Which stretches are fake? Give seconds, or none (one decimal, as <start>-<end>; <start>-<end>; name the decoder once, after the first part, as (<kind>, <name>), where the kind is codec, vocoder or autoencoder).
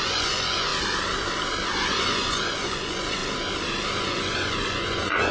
0.0-0.7 (vocoder, Vocos); 1.7-3.2; 4.0-5.3